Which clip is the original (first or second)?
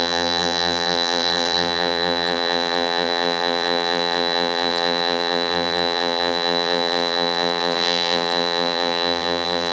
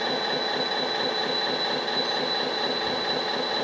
second